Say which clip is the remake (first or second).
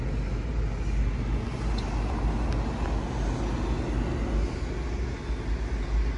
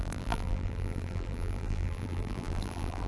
second